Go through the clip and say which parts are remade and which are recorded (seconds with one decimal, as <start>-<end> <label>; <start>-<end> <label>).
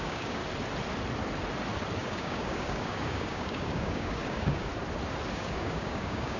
0.0-0.4 remade; 0.4-2.0 recorded; 2.0-4.7 remade; 4.7-5.3 recorded; 5.3-6.4 remade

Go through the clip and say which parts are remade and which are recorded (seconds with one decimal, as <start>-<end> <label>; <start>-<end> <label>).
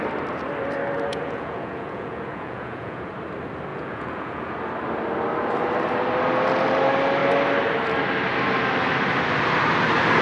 0.0-1.1 recorded; 1.1-3.1 remade; 3.1-3.7 recorded; 3.7-4.5 remade; 4.5-10.2 recorded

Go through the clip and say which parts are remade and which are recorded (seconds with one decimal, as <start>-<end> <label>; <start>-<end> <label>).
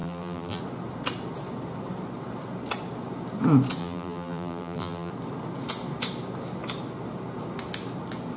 0.0-0.6 remade; 0.6-3.8 recorded; 3.8-5.1 remade; 5.1-8.4 recorded